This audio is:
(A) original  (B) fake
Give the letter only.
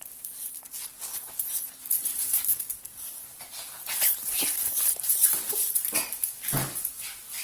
A